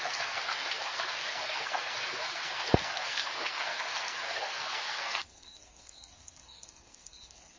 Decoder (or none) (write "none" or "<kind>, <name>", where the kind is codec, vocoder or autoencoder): codec, SNAC